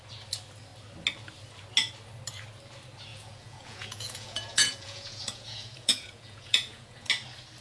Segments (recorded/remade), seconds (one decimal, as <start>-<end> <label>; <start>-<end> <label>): 0.0-3.1 recorded; 3.1-7.1 remade; 7.1-7.6 recorded